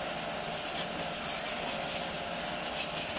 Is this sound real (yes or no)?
yes